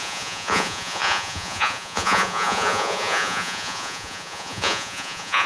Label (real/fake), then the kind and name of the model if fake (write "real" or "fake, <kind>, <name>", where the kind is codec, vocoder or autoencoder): fake, vocoder, Vocos